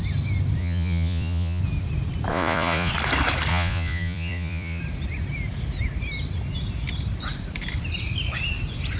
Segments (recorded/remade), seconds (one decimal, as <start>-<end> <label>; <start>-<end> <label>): 0.0-0.6 recorded; 0.6-1.6 remade; 1.6-2.3 recorded; 2.3-2.9 remade; 2.9-3.5 recorded; 3.5-4.8 remade; 4.8-9.0 recorded